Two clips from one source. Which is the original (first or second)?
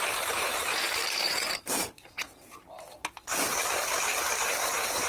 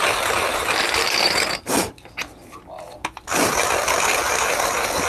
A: second